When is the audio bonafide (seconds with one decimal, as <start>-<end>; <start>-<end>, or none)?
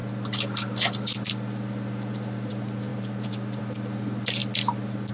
0.0-2.9; 3.6-5.1